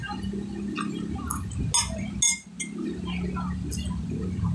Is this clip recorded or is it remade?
recorded